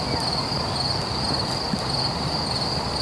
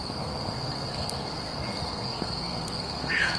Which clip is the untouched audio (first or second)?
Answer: first